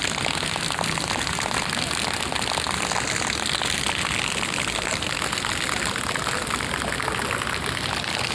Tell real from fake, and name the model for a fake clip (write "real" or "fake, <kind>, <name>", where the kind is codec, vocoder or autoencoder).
real